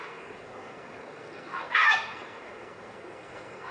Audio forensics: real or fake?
fake